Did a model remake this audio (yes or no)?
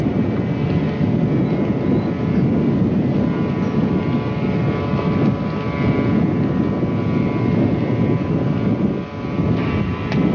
no